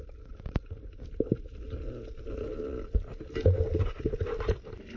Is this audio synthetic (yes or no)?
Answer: no